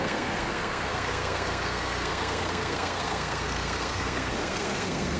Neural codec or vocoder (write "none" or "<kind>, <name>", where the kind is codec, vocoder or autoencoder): codec, SNAC